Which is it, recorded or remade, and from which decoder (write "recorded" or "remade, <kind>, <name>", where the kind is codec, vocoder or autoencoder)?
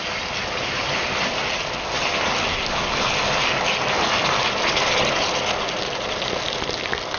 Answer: recorded